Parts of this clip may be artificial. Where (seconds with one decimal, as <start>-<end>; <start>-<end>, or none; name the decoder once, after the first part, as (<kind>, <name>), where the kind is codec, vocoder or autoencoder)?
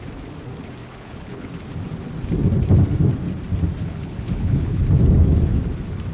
0.8-1.5 (codec, HILCodec); 3.8-4.8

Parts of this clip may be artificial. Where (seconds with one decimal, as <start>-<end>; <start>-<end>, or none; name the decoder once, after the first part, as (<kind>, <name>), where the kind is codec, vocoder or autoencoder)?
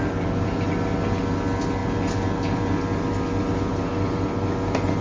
none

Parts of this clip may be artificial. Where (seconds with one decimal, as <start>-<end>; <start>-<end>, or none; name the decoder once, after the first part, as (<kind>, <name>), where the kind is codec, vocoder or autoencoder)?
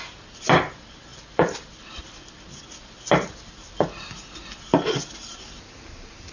1.1-2.0 (vocoder, BigVGAN v2)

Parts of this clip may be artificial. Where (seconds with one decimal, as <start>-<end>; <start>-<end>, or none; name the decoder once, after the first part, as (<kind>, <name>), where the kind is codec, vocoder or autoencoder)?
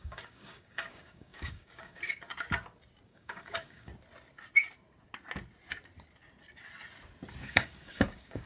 0.0-2.3 (codec, DAC); 3.1-3.9; 7.4-8.5